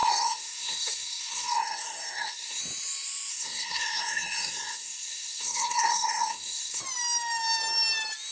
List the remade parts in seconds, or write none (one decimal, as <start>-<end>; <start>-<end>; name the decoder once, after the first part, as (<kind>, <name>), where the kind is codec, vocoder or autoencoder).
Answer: 0.0-2.6 (codec, SNAC); 3.3-6.8